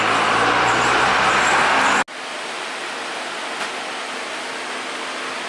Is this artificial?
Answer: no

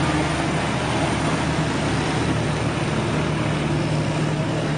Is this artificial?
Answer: no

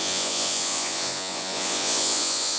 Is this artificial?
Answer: yes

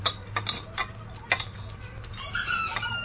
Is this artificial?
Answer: no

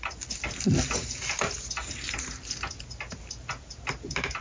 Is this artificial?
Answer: no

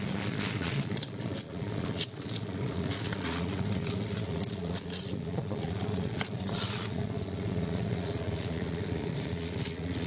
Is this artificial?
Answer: yes